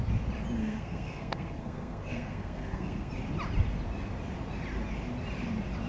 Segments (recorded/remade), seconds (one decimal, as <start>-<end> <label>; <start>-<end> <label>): 0.0-0.6 recorded; 0.6-3.1 remade; 3.1-5.9 recorded